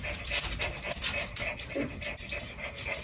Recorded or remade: recorded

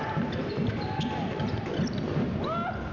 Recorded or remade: recorded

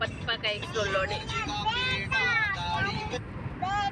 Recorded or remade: recorded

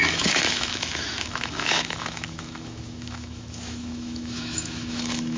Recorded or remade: remade